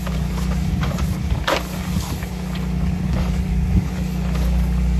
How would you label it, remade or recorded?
remade